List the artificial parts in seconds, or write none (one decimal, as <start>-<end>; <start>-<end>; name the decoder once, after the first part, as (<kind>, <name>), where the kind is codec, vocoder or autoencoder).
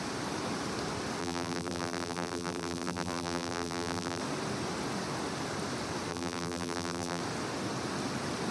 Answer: 1.2-4.2 (vocoder, BigVGAN v2); 6.1-7.2